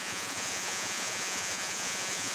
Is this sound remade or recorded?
remade